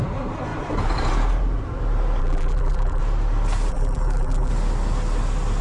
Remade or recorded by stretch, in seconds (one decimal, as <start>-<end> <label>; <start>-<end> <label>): 0.0-2.2 recorded; 2.2-3.0 remade; 3.0-3.7 recorded; 3.7-4.5 remade; 4.5-5.6 recorded